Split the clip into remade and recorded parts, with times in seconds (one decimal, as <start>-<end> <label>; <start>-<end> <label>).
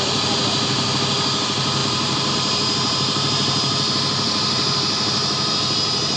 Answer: 0.0-6.2 recorded